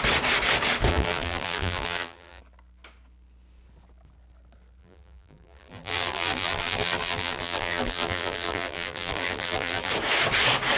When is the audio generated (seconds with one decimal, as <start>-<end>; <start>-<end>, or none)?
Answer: 0.9-2.4; 4.8-9.9